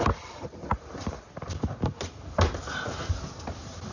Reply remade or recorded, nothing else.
recorded